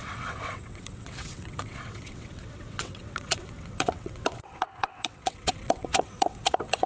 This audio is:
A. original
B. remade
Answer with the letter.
B